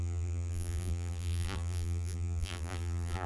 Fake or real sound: fake